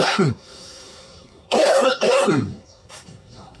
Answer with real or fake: fake